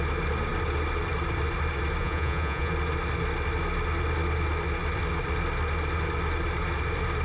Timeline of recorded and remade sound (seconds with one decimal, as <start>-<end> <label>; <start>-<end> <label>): 0.0-2.0 recorded; 2.0-2.7 remade; 2.7-7.2 recorded